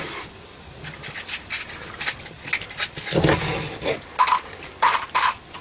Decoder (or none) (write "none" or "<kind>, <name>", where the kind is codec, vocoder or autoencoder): none